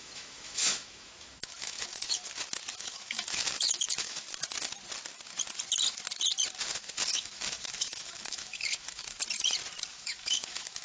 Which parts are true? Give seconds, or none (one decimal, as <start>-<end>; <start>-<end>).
2.2-2.7; 4.3-6.6; 9.2-9.9